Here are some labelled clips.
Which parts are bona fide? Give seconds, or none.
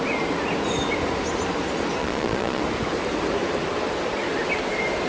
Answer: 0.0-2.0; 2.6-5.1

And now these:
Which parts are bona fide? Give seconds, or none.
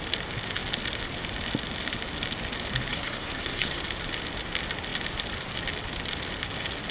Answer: 0.0-2.9; 3.8-6.9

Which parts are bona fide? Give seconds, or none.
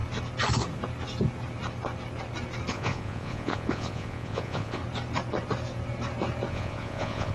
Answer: 0.0-2.7; 4.8-6.5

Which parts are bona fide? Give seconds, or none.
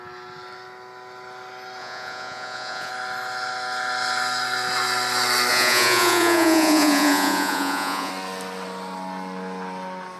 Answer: 0.0-1.8; 2.9-5.5; 8.1-10.2